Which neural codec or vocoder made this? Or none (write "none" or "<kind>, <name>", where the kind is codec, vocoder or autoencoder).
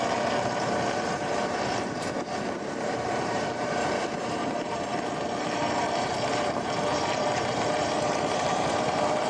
vocoder, BigVGAN v2